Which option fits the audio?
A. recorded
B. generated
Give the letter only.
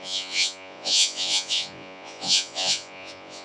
B